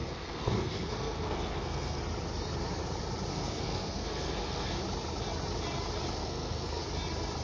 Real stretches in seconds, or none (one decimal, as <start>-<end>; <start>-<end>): 2.0-3.3; 4.8-6.2; 6.8-7.4